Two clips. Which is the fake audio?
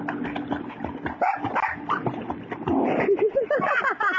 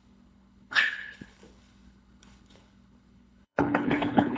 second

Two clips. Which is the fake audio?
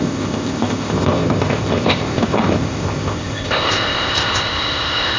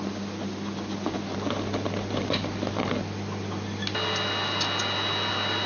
first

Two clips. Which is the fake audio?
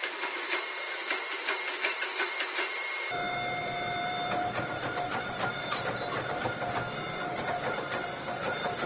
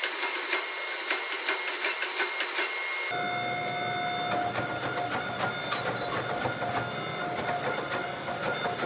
first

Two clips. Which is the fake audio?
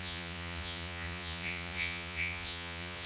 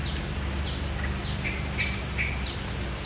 first